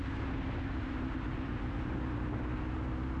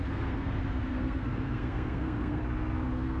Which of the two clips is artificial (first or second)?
second